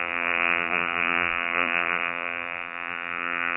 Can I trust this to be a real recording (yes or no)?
no